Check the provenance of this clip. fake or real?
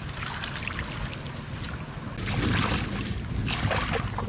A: real